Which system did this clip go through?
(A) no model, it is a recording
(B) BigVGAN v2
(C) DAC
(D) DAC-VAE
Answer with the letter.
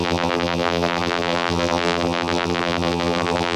B